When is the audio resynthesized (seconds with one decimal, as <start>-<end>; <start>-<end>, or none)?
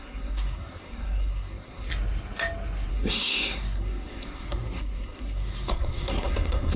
0.0-1.9; 2.9-6.8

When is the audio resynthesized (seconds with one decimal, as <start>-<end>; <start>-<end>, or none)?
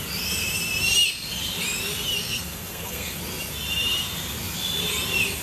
2.2-3.2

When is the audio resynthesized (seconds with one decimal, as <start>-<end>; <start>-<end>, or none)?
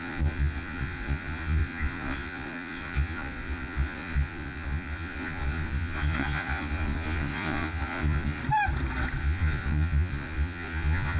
0.0-8.4; 9.2-11.2